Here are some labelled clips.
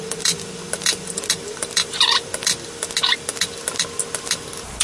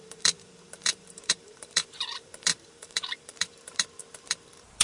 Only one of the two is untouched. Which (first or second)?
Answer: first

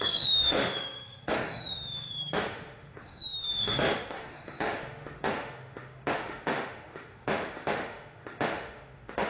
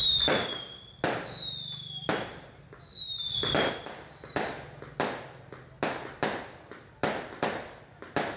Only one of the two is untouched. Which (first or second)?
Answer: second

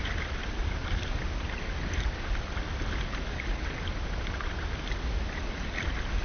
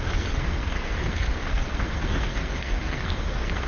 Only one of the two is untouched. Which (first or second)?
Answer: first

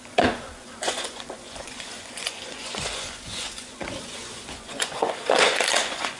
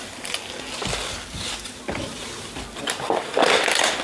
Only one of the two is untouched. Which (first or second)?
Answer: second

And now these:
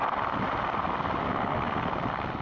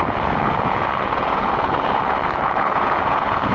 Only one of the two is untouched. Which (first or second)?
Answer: first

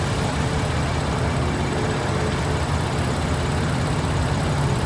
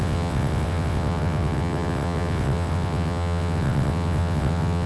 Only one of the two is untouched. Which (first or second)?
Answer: first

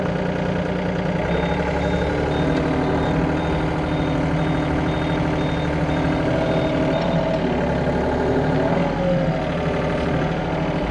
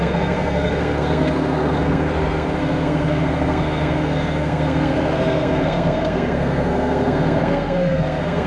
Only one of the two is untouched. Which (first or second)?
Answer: first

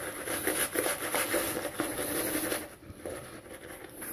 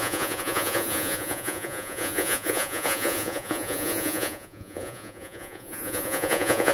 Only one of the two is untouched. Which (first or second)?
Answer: first